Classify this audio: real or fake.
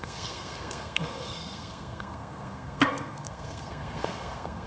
fake